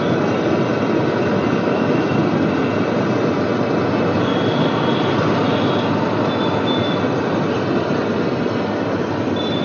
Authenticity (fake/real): real